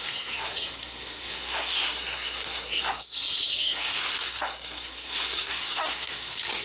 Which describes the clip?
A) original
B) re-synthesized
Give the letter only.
B